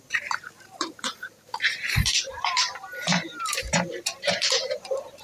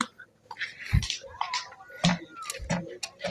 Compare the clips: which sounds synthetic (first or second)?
first